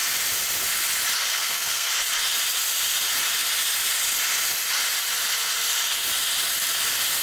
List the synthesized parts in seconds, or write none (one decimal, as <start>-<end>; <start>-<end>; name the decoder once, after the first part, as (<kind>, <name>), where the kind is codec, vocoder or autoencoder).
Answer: 1.3-1.9 (codec, SNAC)

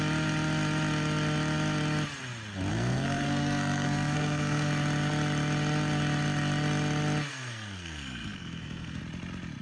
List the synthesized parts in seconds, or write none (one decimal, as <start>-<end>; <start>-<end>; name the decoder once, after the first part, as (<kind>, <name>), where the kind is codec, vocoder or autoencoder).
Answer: 2.7-4.7 (codec, SNAC); 7.3-9.0

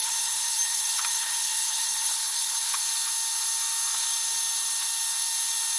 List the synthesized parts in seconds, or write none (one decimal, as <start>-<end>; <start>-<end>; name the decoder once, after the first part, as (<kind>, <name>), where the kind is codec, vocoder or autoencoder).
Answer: 0.0-2.8 (codec, HILCodec)

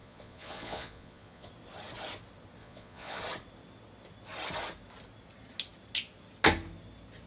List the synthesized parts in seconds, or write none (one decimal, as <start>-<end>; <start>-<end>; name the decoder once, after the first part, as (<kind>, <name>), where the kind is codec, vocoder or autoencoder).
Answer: 0.0-1.5 (vocoder, Vocos); 2.6-3.2

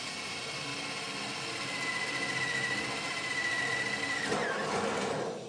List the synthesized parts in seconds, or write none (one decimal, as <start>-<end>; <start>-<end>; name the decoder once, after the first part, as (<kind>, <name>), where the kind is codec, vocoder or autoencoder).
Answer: 0.0-0.7 (vocoder, BigVGAN v2); 4.0-4.4; 5.1-5.5

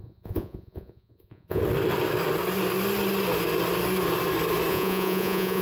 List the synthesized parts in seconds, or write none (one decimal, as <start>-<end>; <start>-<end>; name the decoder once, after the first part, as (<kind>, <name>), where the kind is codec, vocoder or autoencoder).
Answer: 0.0-1.6 (vocoder, Vocos); 4.7-5.6

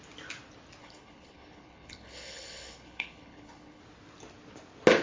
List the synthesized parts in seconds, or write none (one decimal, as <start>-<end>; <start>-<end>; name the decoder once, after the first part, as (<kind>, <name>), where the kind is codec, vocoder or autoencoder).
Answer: 0.8-3.8 (codec, HILCodec)

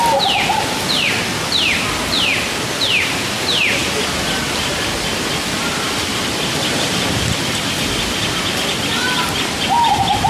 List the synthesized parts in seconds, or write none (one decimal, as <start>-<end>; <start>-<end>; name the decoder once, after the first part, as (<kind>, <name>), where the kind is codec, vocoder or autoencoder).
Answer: none